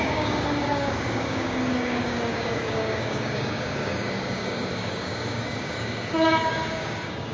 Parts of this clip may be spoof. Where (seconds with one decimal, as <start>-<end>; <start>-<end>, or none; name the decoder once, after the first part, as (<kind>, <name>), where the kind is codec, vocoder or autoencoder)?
0.0-7.3 (codec, DAC)